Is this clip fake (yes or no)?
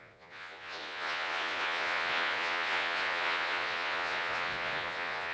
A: yes